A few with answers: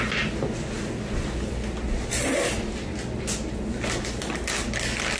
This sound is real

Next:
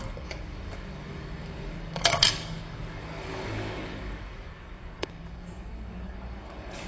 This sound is fake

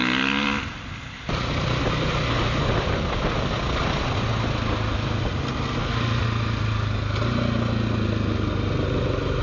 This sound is real